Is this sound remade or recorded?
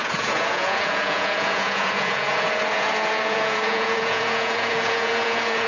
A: remade